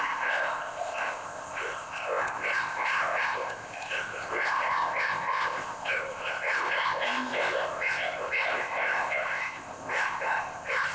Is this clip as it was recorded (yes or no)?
no